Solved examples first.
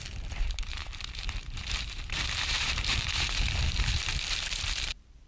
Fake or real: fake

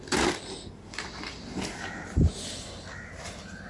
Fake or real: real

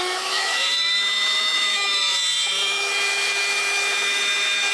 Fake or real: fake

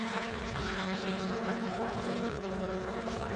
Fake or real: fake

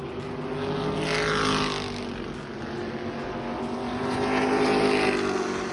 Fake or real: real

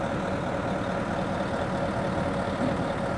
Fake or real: real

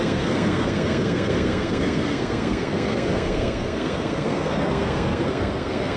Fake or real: fake